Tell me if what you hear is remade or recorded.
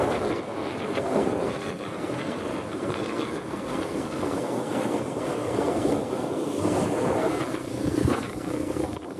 remade